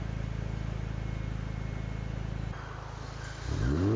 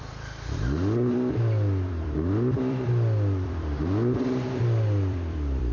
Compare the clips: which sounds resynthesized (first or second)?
second